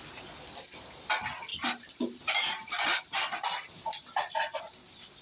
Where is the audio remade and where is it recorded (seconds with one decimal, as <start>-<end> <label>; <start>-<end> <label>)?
0.0-1.5 recorded; 1.5-4.6 remade; 4.6-5.2 recorded